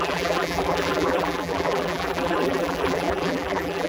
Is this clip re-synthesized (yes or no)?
yes